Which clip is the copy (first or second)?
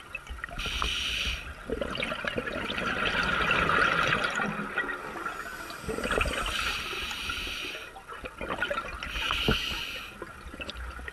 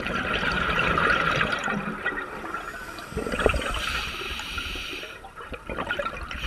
second